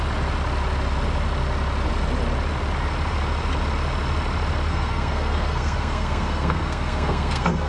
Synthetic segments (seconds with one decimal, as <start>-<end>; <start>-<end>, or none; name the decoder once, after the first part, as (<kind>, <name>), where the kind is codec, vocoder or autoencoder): 4.7-7.7 (codec, SNAC)